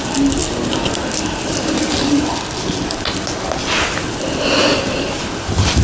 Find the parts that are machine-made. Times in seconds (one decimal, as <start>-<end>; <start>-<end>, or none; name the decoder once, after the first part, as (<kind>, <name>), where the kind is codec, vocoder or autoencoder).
none